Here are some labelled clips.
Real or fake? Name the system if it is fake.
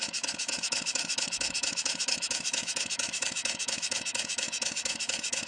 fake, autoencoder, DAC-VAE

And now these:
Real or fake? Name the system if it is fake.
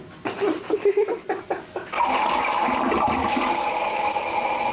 real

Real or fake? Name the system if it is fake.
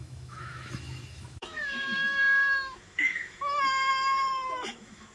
fake, autoencoder, DAC-VAE